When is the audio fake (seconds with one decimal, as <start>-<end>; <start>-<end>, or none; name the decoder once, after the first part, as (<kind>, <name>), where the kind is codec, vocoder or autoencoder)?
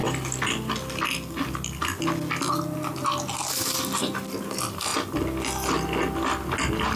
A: none